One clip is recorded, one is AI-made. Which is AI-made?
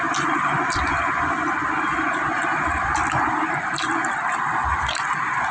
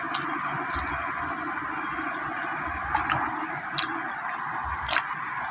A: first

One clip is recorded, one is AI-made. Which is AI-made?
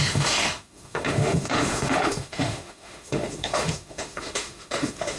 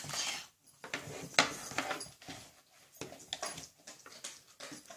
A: first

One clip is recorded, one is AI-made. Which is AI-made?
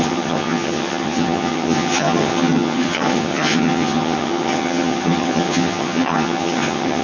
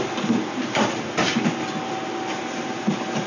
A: first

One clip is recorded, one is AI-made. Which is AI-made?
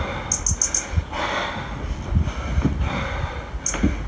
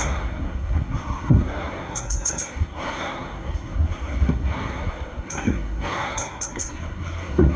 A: second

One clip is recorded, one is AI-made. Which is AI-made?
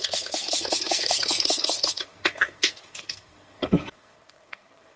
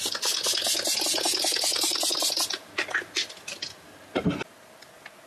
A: first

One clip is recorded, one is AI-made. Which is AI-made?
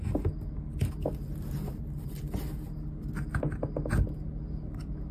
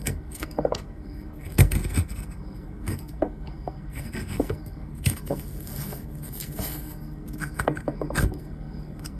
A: second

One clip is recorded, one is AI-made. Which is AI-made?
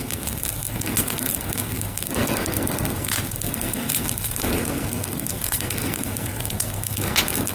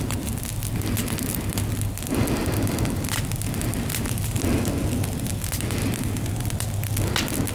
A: first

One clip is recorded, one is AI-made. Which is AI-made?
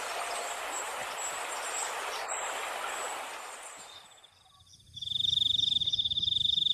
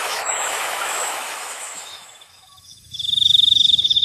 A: second